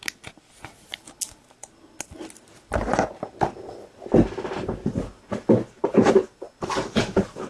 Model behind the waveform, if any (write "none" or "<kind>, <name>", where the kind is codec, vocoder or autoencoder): none